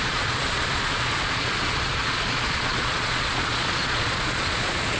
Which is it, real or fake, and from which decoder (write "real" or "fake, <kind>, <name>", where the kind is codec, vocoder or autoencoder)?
fake, vocoder, Vocos